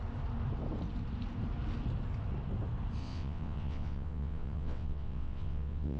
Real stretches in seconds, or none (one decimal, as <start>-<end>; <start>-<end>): 0.0-3.0